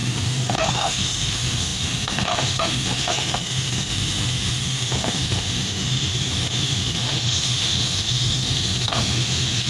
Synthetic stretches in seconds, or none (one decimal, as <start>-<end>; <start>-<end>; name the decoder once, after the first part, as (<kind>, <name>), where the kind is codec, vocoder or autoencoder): 0.0-9.7 (autoencoder, DAC-VAE)